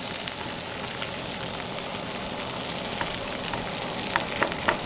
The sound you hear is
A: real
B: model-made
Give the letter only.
A